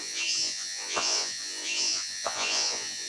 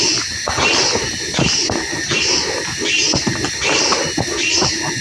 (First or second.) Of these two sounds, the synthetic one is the first